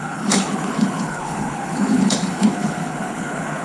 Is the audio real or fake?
fake